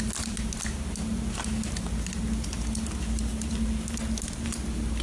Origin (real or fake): real